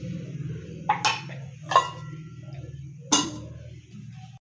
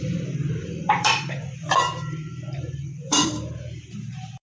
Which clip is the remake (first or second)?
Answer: second